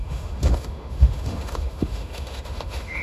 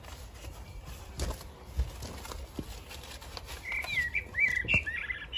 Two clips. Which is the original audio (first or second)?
second